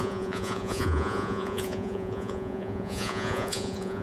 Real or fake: fake